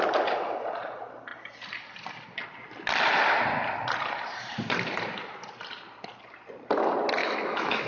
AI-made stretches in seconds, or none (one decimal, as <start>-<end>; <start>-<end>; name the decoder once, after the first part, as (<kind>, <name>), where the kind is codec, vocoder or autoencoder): 7.2-7.9 (autoencoder, DAC-VAE)